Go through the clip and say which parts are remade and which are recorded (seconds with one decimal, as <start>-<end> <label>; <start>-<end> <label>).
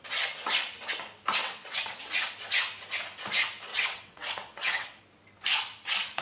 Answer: 0.0-1.4 recorded; 1.4-2.1 remade; 2.1-3.7 recorded; 3.7-5.0 remade; 5.0-6.2 recorded